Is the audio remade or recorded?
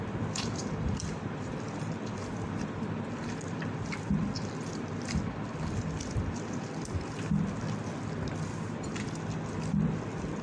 recorded